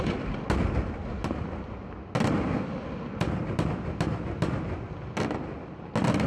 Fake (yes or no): no